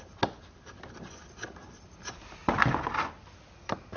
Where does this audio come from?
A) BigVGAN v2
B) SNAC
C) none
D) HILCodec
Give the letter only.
C